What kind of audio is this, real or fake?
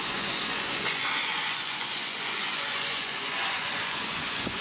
fake